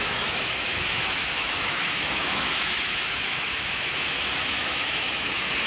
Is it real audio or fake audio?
fake